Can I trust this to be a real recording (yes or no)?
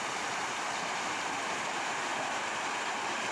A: yes